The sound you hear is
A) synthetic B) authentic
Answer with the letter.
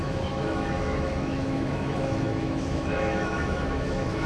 A